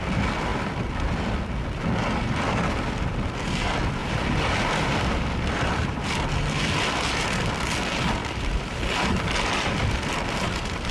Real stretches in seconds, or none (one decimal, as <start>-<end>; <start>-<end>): 0.0-4.0; 6.0-8.2; 9.0-10.9